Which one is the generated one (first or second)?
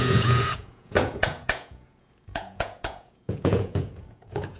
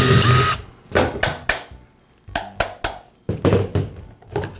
first